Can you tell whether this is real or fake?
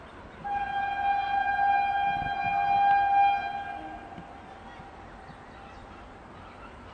real